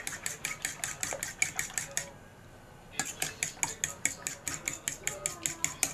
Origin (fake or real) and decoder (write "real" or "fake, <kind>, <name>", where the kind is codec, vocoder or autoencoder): real